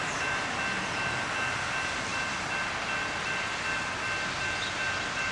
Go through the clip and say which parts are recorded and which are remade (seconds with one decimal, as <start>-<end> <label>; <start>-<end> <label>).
0.0-5.3 recorded